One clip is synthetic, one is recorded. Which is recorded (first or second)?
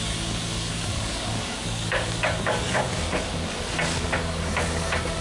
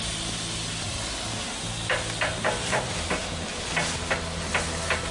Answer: second